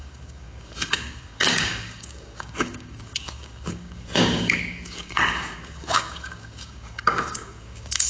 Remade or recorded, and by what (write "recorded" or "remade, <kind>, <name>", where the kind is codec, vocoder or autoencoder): remade, codec, DAC